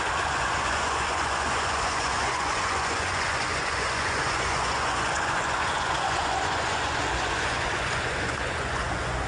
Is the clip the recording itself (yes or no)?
no